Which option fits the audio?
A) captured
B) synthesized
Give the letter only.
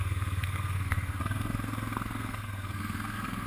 B